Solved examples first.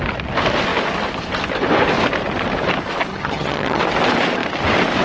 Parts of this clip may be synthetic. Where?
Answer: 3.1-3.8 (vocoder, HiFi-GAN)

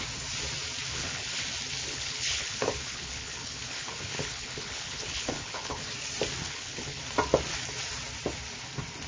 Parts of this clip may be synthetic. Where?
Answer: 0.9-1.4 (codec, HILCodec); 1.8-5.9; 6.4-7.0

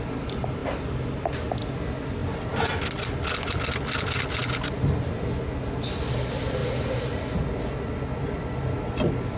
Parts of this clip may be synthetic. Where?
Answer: none

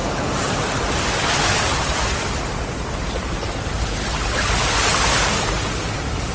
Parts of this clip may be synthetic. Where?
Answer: none

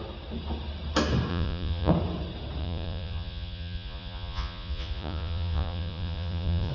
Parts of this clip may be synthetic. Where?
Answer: 1.3-1.9 (vocoder, Vocos); 2.6-6.7

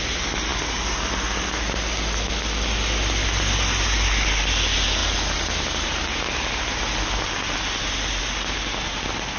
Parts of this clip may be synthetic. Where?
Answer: none

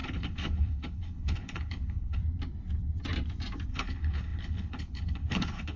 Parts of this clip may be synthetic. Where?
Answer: 0.0-2.2 (codec, HILCodec); 3.7-5.8

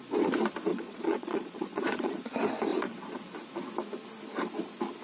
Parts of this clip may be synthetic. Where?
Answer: 0.7-2.2 (vocoder, Vocos); 2.7-3.3